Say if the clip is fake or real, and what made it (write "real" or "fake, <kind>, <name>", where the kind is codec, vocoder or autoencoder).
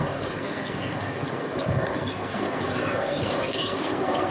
fake, codec, SNAC